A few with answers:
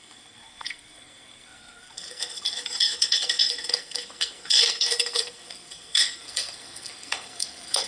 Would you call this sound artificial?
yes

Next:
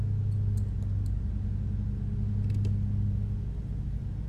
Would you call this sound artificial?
no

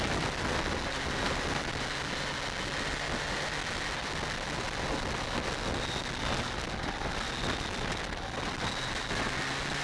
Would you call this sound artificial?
no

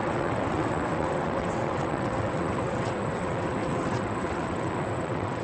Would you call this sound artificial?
yes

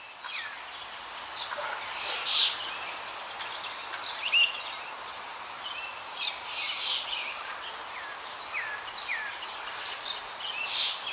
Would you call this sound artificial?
no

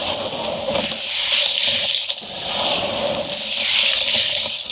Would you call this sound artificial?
no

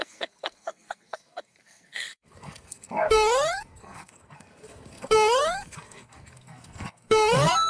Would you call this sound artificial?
yes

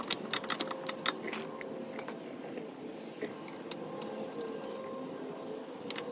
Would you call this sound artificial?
no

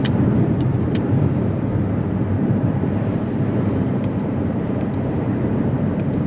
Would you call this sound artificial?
yes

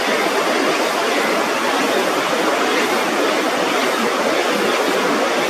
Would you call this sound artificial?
no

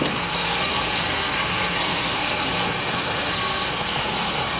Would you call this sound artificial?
yes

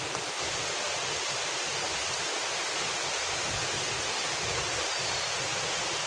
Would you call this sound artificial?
no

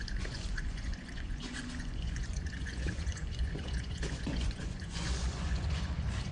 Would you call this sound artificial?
yes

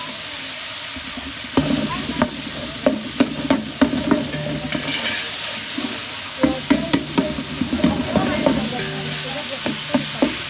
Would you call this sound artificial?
no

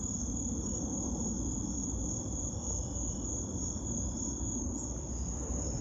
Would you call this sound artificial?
no